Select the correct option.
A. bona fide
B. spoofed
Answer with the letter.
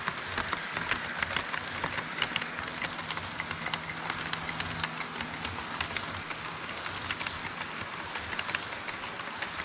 A